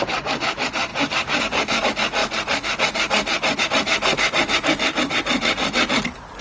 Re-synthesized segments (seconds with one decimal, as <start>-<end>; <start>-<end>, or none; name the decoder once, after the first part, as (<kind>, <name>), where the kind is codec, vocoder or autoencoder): 0.9-1.8 (codec, DAC)